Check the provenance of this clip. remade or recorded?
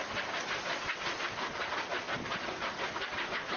recorded